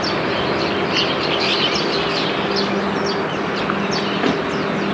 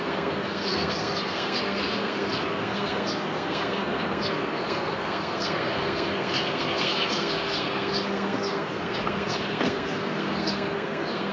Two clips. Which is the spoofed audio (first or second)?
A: second